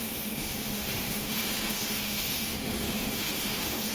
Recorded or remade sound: remade